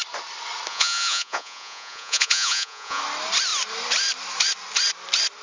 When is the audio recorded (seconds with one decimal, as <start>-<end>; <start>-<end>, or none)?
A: 0.0-0.7; 3.0-5.4